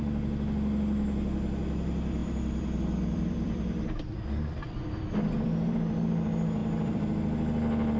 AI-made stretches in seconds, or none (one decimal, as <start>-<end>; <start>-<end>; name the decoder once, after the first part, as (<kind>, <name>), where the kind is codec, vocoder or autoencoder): 2.2-4.3 (vocoder, BigVGAN v2); 6.6-8.0